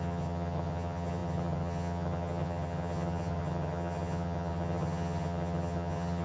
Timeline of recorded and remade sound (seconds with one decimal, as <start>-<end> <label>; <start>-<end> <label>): 0.0-6.2 remade

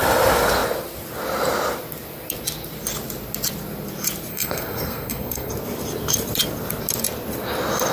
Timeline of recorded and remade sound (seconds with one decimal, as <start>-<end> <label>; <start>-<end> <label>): 0.0-4.3 recorded; 4.3-5.5 remade; 5.5-7.9 recorded

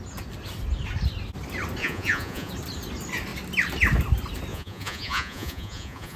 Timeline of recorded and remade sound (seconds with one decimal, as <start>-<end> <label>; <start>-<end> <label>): 0.0-1.8 recorded; 1.8-2.5 remade; 2.5-4.5 recorded; 4.5-6.2 remade

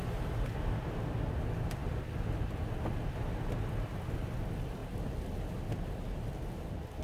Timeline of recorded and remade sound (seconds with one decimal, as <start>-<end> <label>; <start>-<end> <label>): 0.0-7.0 recorded

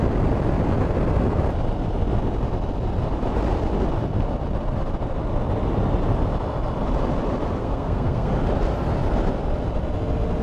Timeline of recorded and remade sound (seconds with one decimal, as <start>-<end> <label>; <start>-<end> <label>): 0.0-7.6 recorded; 7.6-8.3 remade; 8.3-10.4 recorded

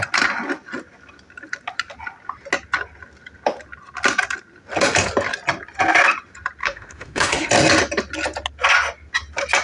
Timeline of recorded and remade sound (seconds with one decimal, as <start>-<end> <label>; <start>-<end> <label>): 0.0-6.6 recorded; 6.6-7.5 remade; 7.5-9.6 recorded

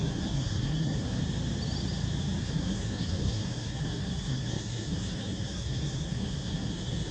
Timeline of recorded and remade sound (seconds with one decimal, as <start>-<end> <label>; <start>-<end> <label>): 0.0-1.2 remade; 1.2-2.4 recorded; 2.4-7.1 remade